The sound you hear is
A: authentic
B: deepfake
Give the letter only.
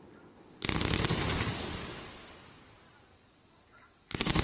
A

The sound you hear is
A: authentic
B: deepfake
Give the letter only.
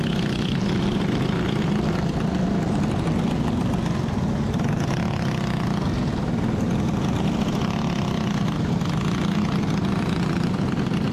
A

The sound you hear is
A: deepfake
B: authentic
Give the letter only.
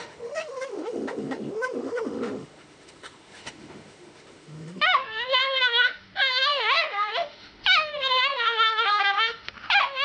A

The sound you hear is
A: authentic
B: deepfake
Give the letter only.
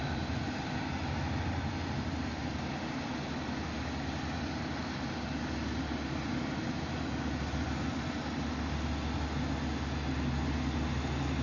A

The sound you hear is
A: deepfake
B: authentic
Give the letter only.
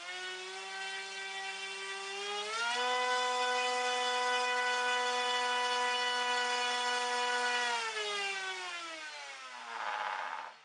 B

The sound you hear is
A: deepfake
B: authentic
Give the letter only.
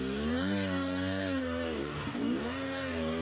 A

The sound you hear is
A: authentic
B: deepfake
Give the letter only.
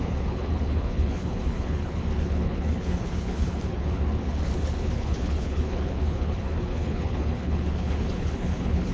B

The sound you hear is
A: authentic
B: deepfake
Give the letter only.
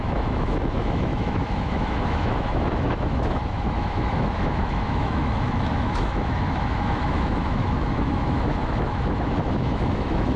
B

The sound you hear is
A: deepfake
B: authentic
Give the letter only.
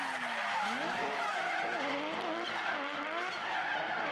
B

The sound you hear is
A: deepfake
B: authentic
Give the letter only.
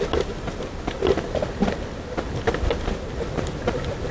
B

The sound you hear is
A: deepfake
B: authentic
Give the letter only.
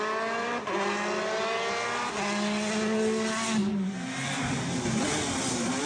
B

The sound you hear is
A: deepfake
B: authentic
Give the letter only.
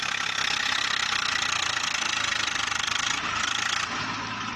B